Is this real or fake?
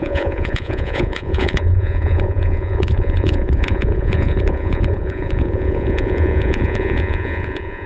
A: fake